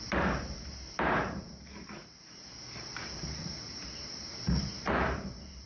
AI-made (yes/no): yes